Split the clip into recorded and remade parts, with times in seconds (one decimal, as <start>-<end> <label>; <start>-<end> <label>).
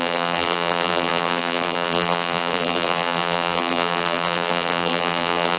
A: 0.0-5.6 remade